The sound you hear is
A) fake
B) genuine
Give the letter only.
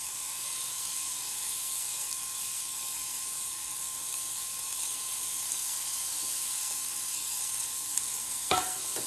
A